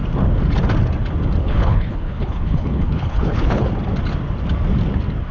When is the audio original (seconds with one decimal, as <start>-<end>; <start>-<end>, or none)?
0.0-1.4; 3.7-5.3